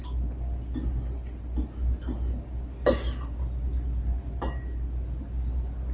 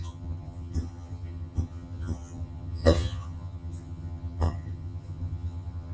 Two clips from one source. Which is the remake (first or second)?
second